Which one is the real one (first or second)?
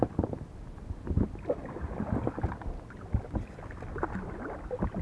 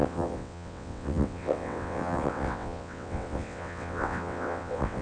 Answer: first